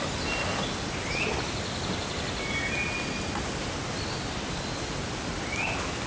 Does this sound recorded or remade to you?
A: recorded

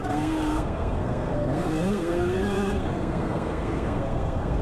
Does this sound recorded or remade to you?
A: remade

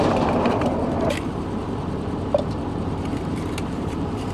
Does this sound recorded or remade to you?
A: remade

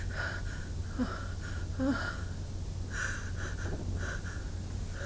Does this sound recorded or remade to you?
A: recorded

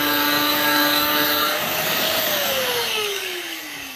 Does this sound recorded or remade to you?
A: remade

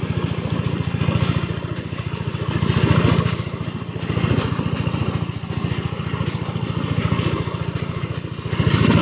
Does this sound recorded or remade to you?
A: recorded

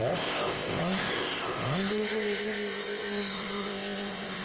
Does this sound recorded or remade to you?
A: remade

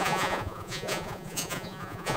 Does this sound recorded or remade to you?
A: remade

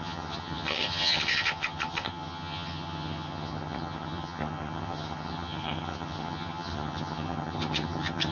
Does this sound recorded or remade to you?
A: remade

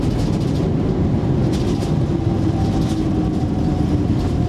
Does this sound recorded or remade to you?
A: recorded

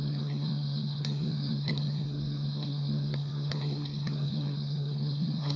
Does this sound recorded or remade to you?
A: remade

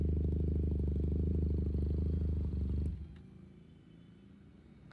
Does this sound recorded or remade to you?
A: recorded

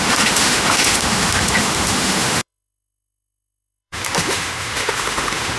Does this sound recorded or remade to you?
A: remade